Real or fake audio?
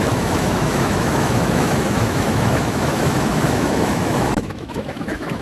fake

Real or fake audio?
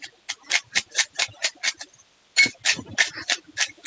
real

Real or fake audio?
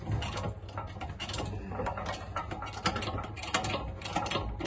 real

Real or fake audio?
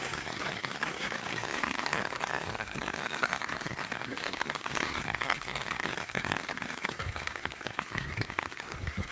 fake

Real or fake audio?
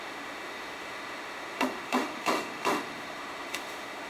fake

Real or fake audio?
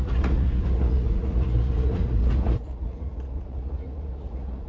fake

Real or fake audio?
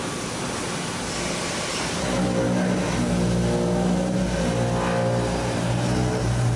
real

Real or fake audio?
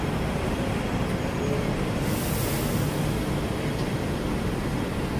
real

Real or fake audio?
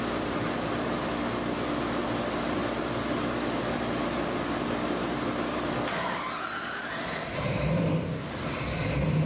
real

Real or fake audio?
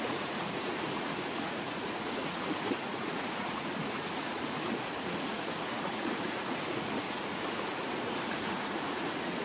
fake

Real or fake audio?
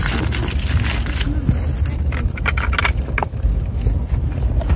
real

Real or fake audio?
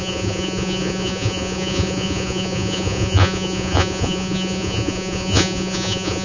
fake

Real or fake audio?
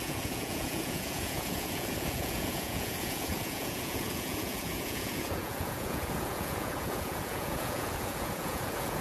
fake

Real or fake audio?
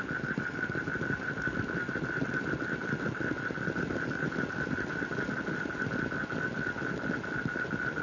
real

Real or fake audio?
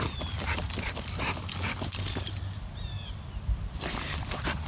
real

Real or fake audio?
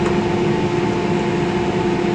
real